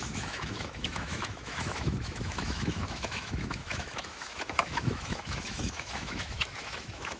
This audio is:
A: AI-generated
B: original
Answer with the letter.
A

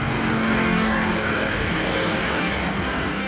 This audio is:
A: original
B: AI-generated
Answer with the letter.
B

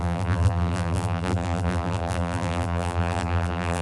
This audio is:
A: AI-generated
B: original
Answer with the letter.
A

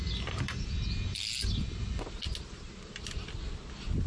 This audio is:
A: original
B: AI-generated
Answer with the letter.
A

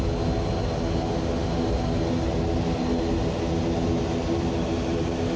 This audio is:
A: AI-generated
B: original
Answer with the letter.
B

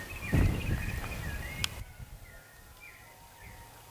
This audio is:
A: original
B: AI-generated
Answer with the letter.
A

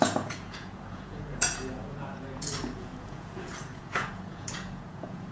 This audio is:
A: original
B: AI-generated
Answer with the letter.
B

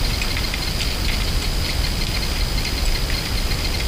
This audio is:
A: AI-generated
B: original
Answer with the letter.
B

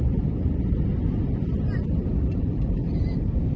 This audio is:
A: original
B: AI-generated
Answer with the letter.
B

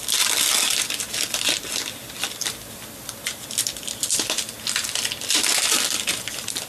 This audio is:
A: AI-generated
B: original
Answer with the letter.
B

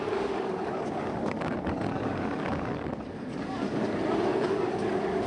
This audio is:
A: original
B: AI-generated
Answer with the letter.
B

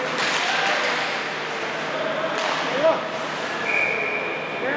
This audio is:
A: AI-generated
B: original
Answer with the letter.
B